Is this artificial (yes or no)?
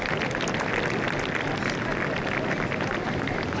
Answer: no